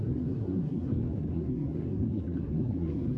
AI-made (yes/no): yes